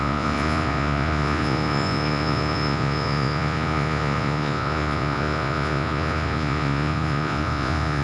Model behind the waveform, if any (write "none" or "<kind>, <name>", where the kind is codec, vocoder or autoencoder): vocoder, Vocos